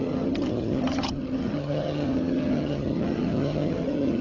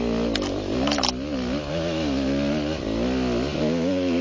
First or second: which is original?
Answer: second